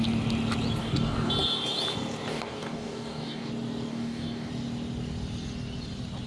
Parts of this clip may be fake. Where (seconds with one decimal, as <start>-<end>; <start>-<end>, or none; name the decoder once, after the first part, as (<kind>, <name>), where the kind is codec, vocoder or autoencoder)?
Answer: 0.8-1.3 (codec, DAC); 2.3-3.5; 3.9-4.5